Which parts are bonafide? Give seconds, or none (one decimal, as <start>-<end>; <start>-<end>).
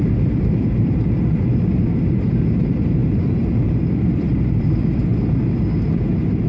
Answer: 5.1-5.9